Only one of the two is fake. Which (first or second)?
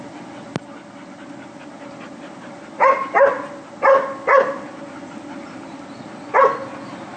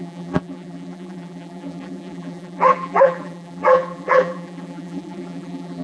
second